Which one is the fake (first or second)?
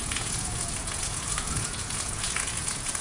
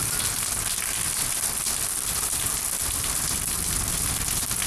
first